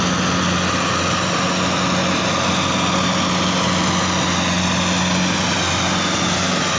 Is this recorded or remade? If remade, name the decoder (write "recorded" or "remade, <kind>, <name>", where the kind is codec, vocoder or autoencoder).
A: recorded